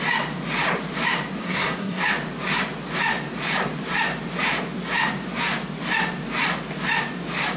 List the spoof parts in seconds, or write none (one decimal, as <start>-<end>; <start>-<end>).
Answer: 1.4-2.0